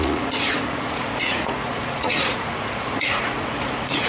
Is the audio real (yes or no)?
no